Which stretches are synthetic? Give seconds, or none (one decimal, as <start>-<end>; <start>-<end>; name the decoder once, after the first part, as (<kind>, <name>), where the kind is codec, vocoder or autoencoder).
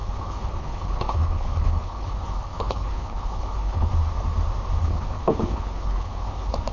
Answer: 0.0-3.9 (codec, HILCodec); 4.8-6.7